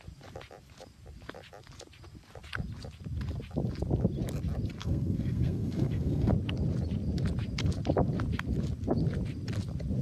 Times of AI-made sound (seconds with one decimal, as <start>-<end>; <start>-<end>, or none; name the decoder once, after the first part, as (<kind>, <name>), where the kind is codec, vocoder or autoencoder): 4.8-6.3 (codec, SNAC)

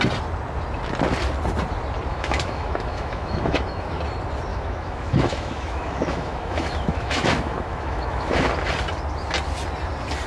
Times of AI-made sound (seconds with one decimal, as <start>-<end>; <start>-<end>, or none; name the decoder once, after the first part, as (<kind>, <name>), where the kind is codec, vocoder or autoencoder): 2.1-4.0 (autoencoder, DAC-VAE); 4.5-8.5

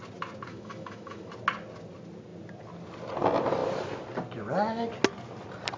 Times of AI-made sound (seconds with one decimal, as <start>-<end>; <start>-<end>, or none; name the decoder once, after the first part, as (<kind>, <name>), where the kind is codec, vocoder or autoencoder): 0.5-1.3 (autoencoder, DAC-VAE)

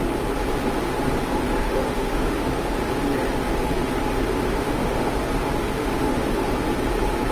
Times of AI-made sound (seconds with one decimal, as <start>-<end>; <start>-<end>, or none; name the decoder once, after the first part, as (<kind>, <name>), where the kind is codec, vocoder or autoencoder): 1.6-2.8 (autoencoder, DAC-VAE); 4.4-5.1; 5.8-6.5

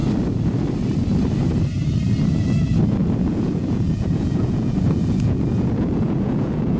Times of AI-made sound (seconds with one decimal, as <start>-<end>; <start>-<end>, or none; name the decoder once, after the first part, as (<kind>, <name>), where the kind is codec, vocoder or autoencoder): 3.0-6.8 (vocoder, Vocos)

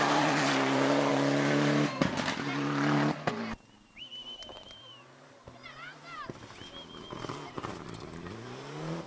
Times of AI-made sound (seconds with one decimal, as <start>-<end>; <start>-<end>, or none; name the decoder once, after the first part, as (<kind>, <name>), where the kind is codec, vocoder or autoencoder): none